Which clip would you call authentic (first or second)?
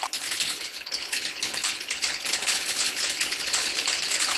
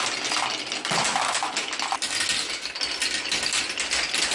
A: second